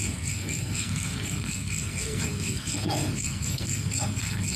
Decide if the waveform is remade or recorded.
remade